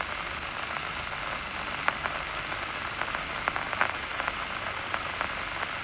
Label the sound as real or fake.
real